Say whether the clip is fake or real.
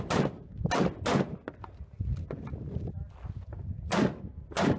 real